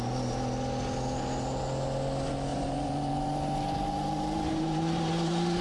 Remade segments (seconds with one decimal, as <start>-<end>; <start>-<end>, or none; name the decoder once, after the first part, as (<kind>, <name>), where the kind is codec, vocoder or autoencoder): 2.5-5.6 (vocoder, BigVGAN v2)

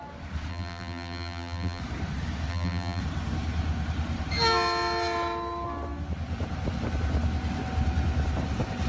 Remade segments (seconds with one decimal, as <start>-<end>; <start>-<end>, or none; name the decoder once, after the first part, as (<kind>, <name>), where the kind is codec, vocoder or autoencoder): 0.5-1.8 (vocoder, BigVGAN v2); 2.5-3.0